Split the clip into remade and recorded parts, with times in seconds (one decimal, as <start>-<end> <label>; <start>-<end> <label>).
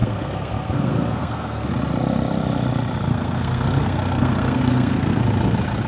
0.0-1.7 remade; 1.7-3.1 recorded; 3.1-5.2 remade; 5.2-5.9 recorded